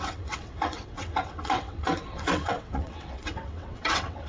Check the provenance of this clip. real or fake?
fake